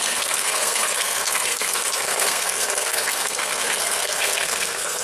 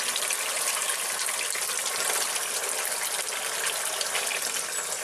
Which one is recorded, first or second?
second